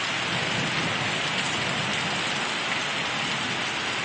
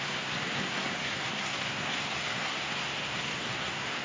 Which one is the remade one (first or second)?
second